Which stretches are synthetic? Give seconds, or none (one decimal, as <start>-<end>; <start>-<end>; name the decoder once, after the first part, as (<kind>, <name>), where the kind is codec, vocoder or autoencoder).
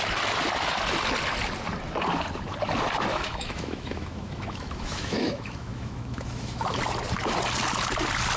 3.1-6.8 (autoencoder, DAC-VAE)